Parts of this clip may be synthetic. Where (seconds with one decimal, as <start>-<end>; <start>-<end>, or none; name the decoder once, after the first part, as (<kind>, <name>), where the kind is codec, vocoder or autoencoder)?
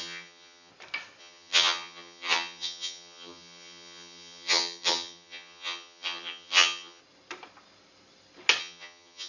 0.0-0.7 (vocoder, HiFi-GAN); 1.2-7.0; 8.6-9.3